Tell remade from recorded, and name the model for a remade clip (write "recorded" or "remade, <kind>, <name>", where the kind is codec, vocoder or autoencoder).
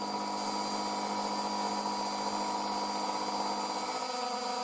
recorded